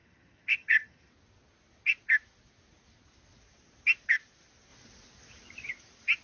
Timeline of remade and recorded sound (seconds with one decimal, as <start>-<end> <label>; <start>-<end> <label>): 0.0-1.1 remade; 1.1-6.2 recorded